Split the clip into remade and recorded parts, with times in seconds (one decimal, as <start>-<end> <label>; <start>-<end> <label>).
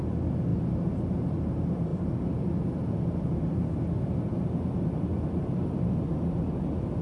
0.0-0.5 recorded; 0.5-1.5 remade; 1.5-1.9 recorded; 1.9-2.5 remade; 2.5-7.0 recorded